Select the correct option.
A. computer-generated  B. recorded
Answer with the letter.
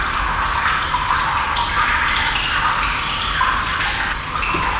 B